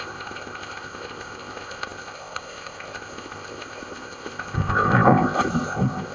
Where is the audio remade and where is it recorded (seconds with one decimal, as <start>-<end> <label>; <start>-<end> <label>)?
0.0-6.1 remade

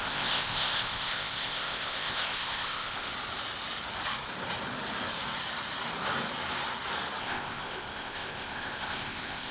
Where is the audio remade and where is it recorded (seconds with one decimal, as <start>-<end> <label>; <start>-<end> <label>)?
0.0-3.1 remade; 3.1-7.2 recorded; 7.2-9.5 remade